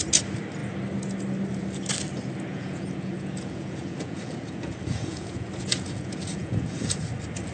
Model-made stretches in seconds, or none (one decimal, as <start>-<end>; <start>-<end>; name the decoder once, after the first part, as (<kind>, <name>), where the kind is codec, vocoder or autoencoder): 2.5-7.0 (vocoder, Vocos)